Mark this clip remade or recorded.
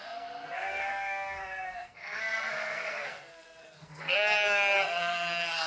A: remade